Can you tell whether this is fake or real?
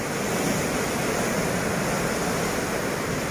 real